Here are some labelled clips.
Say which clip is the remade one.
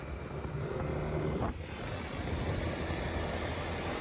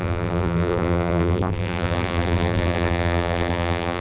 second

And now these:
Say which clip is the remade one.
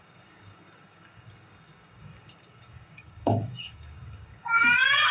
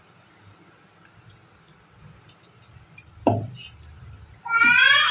first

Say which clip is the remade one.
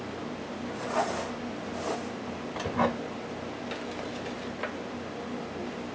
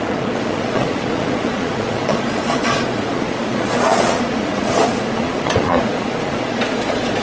second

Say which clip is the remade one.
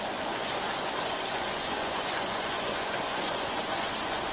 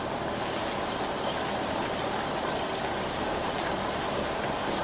first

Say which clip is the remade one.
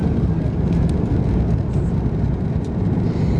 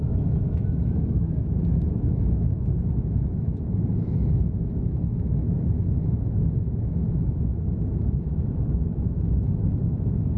second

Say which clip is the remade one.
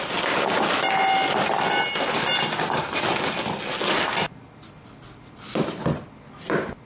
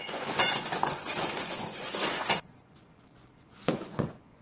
second